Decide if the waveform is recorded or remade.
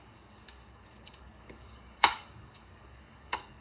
remade